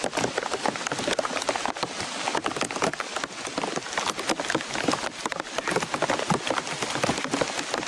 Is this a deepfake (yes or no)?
no